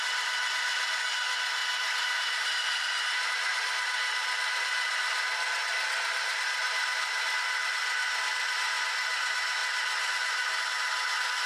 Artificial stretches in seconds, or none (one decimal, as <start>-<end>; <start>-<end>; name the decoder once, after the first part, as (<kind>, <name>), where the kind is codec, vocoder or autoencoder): 1.6-3.3 (vocoder, BigVGAN v2)